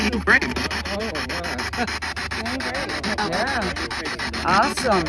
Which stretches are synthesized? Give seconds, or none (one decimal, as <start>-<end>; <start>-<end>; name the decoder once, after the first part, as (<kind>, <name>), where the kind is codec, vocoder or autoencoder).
none